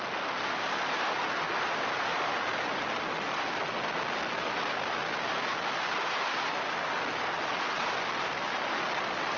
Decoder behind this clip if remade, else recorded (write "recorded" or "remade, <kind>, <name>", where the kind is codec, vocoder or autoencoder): recorded